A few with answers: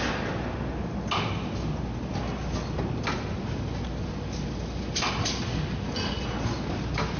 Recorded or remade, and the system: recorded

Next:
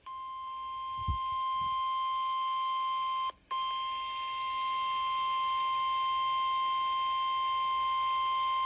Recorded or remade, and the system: recorded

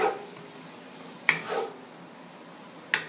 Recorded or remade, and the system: recorded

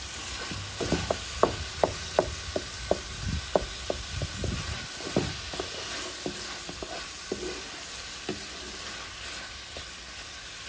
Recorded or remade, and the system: recorded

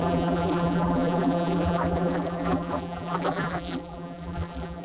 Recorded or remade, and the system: remade, vocoder, BigVGAN v2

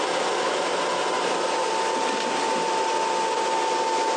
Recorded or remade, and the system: recorded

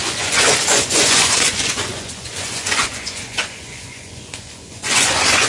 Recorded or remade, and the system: remade, vocoder, Vocos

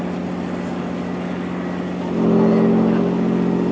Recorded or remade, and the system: recorded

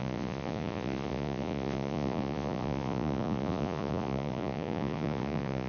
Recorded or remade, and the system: remade, vocoder, Vocos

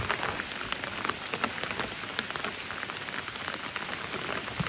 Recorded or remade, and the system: recorded